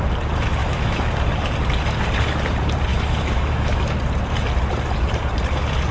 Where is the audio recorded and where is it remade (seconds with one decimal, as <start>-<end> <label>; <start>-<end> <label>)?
0.0-0.6 recorded; 0.6-1.1 remade; 1.1-2.9 recorded; 2.9-3.8 remade; 3.8-5.9 recorded